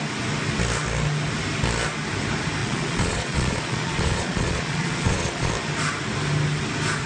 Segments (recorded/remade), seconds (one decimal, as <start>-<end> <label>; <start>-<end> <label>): 0.0-2.6 recorded; 2.6-5.5 remade; 5.5-7.1 recorded